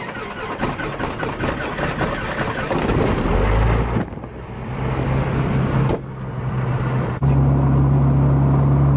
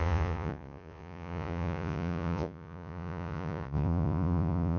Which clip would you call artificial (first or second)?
second